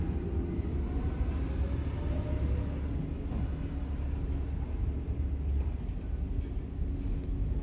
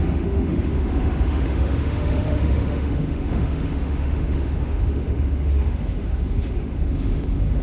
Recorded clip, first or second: first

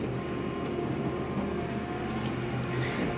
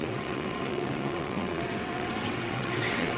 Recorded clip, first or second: first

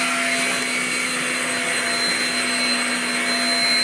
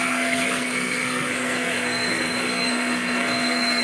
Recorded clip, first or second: first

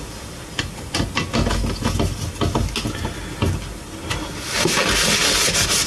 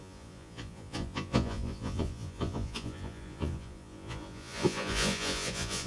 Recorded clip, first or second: first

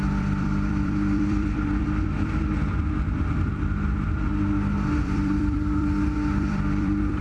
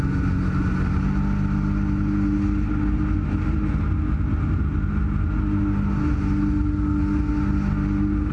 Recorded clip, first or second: second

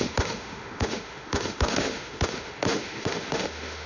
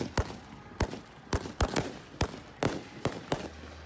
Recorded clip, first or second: second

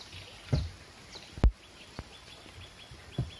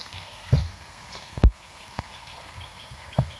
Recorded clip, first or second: first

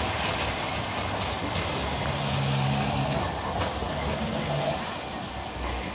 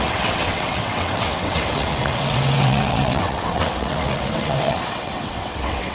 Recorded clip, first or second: first